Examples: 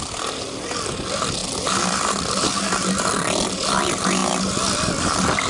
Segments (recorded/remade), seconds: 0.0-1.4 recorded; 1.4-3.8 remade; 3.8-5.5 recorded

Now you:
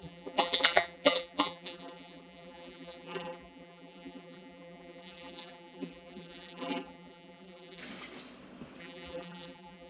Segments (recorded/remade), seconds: 0.0-7.8 remade; 7.8-8.8 recorded; 8.8-9.9 remade

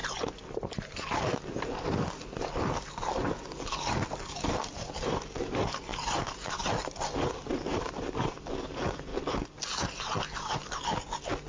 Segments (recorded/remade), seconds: 0.0-2.7 remade; 2.7-5.9 recorded; 5.9-8.5 remade; 8.5-11.5 recorded

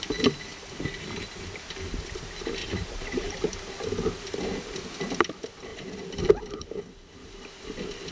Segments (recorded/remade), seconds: 0.0-2.6 recorded; 2.6-3.6 remade; 3.6-5.7 recorded; 5.7-6.8 remade; 6.8-8.1 recorded

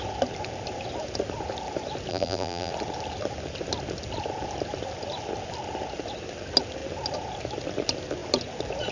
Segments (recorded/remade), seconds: 0.0-2.1 recorded; 2.1-2.7 remade; 2.7-8.9 recorded